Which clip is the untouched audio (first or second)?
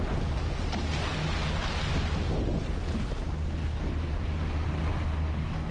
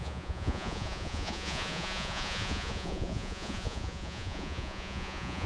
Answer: first